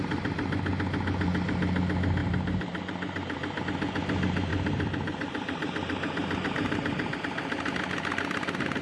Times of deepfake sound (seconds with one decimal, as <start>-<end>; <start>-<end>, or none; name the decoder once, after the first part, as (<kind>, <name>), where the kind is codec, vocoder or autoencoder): 2.2-3.6 (vocoder, BigVGAN v2); 4.5-7.2

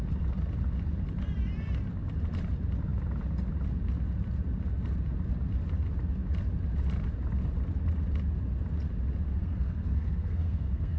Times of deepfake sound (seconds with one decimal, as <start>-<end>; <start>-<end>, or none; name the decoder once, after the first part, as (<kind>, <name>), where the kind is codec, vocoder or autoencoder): 9.4-11.0 (codec, SNAC)

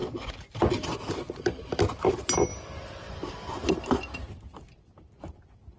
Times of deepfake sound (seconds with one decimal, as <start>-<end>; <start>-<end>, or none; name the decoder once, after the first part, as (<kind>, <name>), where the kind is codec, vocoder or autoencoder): none

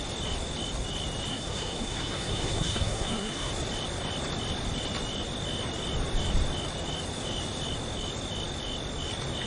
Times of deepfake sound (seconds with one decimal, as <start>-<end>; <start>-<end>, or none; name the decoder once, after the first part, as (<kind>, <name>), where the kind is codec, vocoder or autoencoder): 1.3-3.5 (codec, SNAC)